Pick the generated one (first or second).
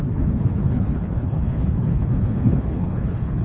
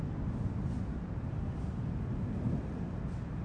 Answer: first